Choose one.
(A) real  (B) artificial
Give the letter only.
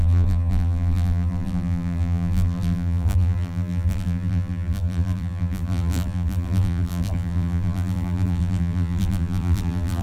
B